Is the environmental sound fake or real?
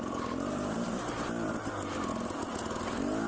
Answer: real